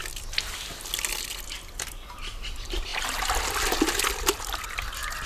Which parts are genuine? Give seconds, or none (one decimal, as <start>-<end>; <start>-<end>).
0.0-5.3